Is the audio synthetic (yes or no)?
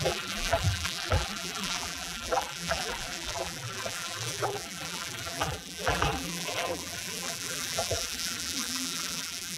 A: yes